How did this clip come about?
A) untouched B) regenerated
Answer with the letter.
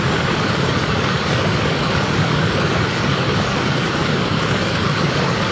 B